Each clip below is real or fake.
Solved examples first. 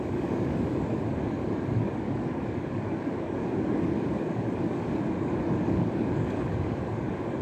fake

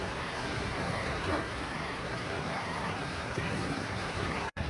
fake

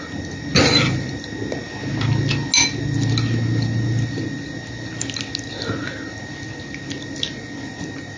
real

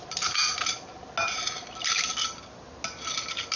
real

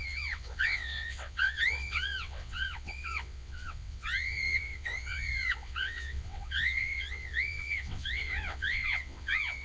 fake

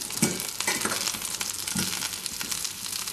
real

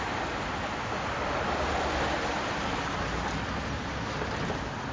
real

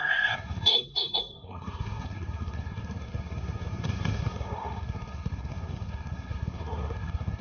fake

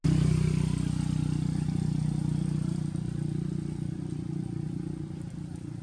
real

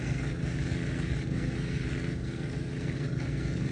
fake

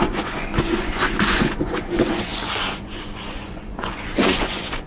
fake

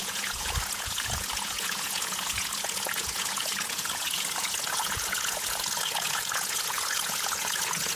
fake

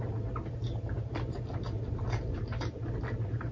real